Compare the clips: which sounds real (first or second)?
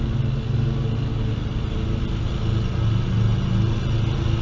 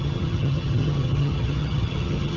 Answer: first